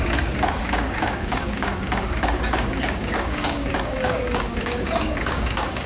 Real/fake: fake